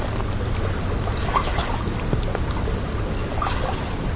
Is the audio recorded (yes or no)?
yes